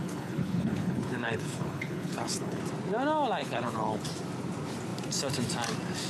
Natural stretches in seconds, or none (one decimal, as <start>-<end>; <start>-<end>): 2.6-3.4; 4.0-6.1